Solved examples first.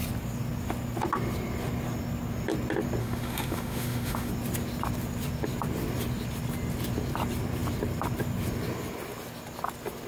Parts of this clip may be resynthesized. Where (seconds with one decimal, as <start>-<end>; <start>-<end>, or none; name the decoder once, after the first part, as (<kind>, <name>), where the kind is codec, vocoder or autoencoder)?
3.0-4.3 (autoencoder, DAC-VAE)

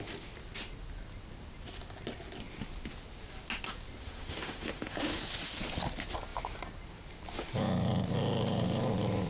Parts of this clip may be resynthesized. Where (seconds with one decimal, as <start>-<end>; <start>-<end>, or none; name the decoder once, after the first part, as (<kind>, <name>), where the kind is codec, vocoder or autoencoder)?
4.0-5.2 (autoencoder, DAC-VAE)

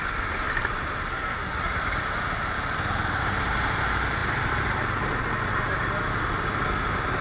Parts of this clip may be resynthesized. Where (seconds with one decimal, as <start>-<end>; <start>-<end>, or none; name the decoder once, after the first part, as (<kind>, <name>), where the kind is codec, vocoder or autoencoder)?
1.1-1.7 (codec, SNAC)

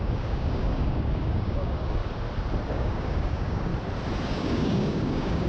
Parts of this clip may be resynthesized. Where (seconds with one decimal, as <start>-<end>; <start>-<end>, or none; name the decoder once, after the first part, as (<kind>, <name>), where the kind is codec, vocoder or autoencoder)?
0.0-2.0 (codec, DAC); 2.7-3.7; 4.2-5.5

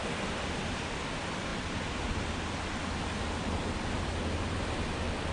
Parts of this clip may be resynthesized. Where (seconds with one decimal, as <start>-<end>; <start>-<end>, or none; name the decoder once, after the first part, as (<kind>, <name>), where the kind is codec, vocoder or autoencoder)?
none

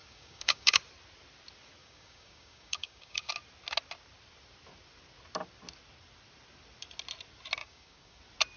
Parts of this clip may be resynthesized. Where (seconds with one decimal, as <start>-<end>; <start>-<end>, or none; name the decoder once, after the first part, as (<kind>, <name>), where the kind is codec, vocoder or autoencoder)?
0.0-0.8 (codec, DAC); 1.8-3.3; 7.6-8.2

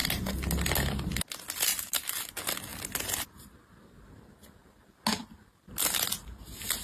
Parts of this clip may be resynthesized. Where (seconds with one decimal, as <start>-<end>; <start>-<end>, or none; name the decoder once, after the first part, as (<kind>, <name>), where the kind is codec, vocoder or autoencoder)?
1.7-2.3 (vocoder, BigVGAN v2)

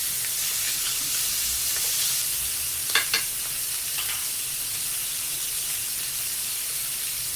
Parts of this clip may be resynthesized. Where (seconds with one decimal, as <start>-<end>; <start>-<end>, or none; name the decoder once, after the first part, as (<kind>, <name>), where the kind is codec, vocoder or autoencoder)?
0.9-1.9 (vocoder, BigVGAN v2); 4.2-7.0